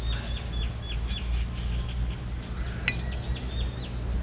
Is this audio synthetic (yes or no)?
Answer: no